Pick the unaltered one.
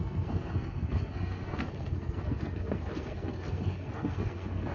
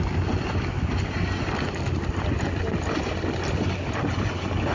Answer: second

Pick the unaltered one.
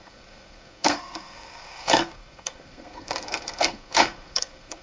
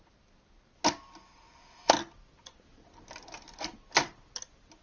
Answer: second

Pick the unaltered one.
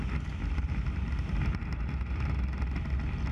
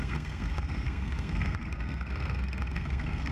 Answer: first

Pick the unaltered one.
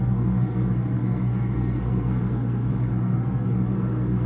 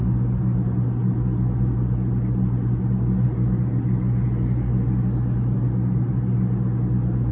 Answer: second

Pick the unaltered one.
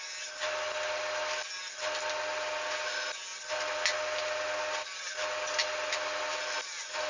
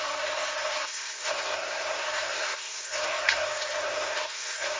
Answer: first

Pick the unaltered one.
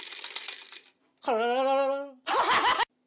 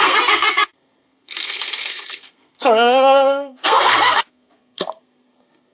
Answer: first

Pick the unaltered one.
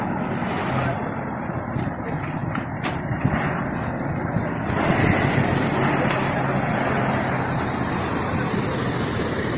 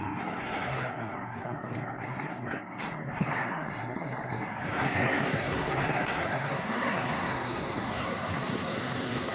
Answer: first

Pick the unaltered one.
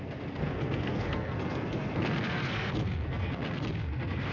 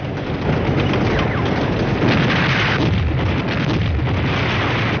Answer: second